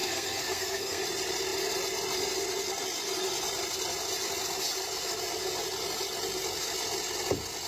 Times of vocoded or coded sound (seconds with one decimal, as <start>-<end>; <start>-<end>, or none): 0.0-1.0